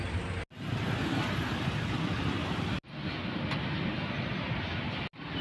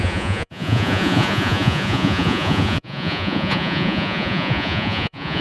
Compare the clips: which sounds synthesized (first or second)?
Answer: second